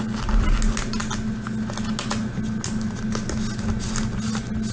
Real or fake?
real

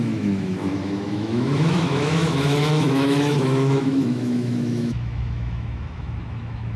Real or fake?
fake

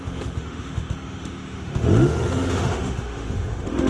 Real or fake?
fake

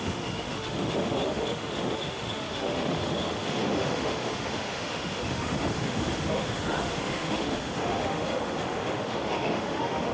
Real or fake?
fake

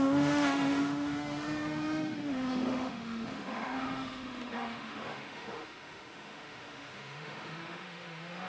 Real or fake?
fake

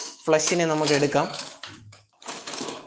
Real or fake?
fake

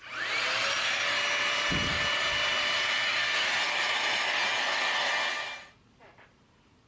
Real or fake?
real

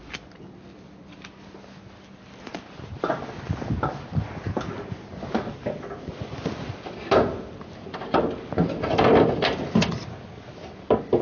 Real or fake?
real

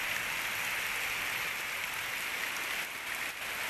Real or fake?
real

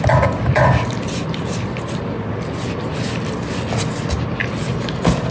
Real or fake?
real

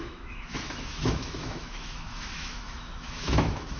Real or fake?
fake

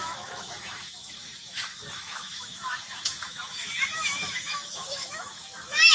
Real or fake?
fake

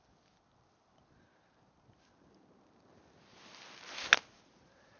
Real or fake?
real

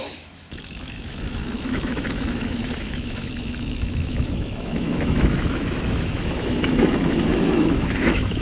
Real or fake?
fake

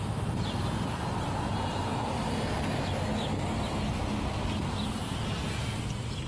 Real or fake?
real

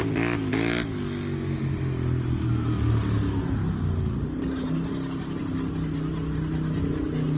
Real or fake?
real